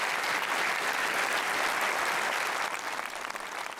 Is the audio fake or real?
real